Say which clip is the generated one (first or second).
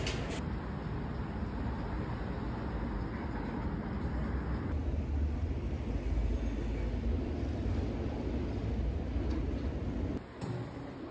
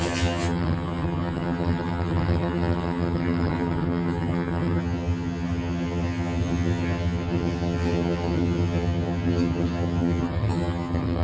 second